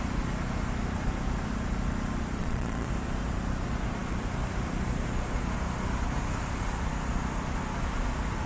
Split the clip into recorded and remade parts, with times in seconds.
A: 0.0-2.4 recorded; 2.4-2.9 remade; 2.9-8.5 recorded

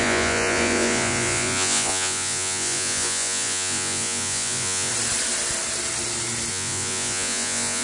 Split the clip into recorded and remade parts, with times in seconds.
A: 0.0-4.9 remade; 4.9-6.5 recorded; 6.5-7.8 remade

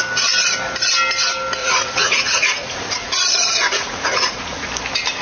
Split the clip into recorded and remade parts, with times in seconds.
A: 0.0-1.6 recorded; 1.6-4.7 remade; 4.7-5.2 recorded

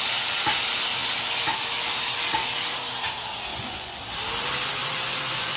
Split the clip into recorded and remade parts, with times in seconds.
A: 0.0-3.5 recorded; 3.5-4.0 remade; 4.0-4.8 recorded; 4.8-5.6 remade

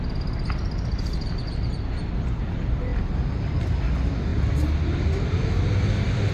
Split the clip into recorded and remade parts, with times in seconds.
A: 0.0-6.3 recorded

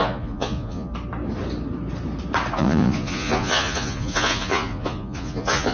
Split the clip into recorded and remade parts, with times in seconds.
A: 0.0-0.9 remade; 0.9-2.5 recorded; 2.5-5.7 remade

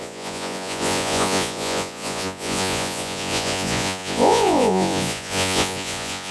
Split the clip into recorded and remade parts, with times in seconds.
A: 0.0-6.3 remade

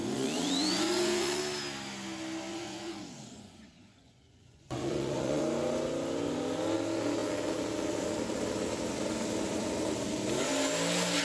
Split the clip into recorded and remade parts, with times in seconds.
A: 0.0-1.4 remade; 1.4-2.5 recorded; 2.5-5.4 remade; 5.4-11.2 recorded